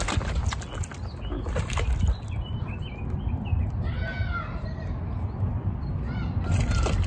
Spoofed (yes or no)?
no